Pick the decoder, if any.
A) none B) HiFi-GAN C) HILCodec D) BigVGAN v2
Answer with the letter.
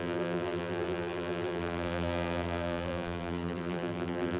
D